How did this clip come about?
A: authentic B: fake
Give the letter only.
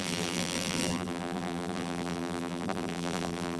B